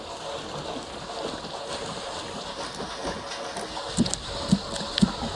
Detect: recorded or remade recorded